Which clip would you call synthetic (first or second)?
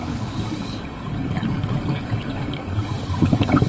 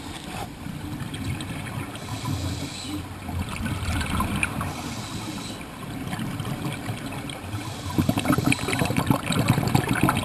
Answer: first